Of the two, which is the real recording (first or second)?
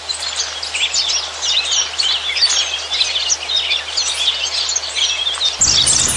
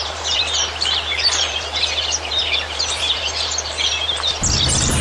first